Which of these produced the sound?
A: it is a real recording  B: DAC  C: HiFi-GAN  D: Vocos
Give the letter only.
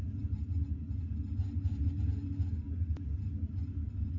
A